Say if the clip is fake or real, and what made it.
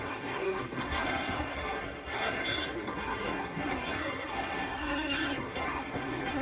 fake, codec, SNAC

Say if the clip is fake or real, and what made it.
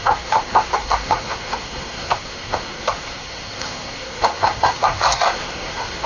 fake, codec, SNAC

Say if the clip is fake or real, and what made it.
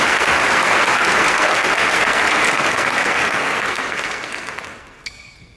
fake, codec, SNAC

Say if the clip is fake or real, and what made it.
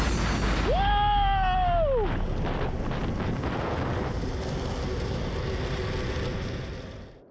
real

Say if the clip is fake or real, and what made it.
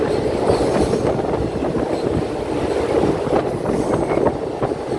real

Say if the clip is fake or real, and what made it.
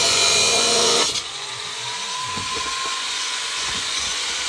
fake, vocoder, Vocos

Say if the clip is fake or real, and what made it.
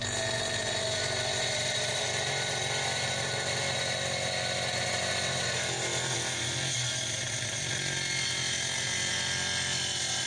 real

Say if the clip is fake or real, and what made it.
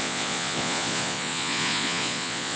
fake, vocoder, Vocos